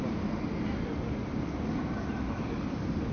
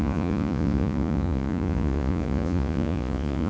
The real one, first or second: first